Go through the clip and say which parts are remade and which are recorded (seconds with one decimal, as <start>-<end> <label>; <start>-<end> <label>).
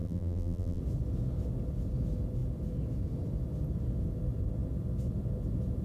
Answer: 0.0-0.8 remade; 0.8-5.8 recorded